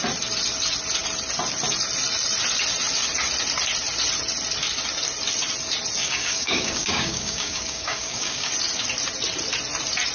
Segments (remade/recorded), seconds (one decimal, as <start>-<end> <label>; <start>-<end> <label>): 0.0-6.0 recorded; 6.0-8.5 remade; 8.5-10.1 recorded